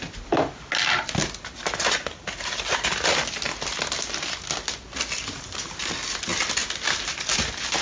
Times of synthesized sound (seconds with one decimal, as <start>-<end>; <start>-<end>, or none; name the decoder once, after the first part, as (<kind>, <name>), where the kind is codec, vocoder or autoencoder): none